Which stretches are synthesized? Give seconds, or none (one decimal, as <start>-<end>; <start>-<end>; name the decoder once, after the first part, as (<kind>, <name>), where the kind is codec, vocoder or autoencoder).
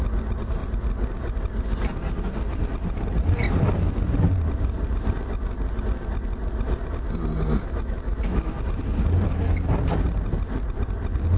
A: 7.5-8.6 (autoencoder, DAC-VAE)